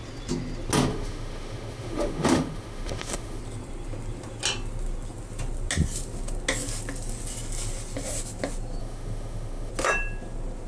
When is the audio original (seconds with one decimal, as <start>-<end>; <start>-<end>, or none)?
0.0-0.9; 3.4-8.8; 9.7-10.7